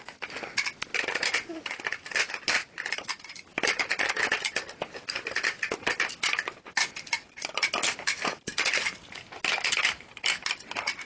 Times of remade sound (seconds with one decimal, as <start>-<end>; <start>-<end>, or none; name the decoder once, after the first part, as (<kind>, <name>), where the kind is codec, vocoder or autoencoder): none